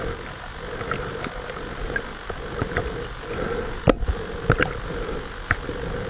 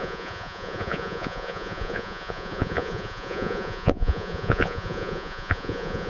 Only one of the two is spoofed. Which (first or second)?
second